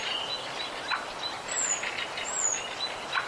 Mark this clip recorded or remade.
recorded